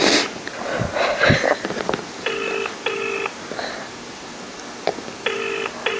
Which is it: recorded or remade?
recorded